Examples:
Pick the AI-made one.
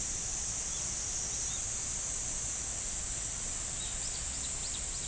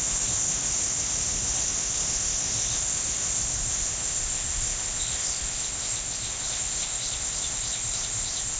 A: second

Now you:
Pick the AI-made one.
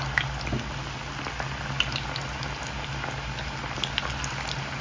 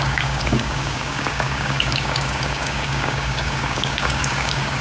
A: second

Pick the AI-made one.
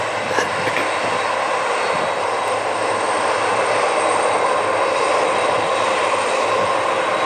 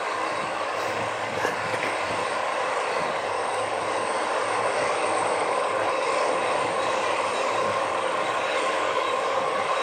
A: second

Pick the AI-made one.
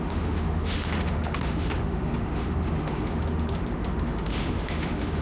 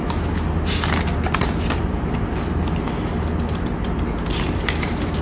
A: first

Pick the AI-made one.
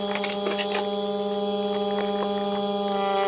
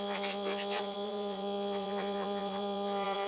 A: second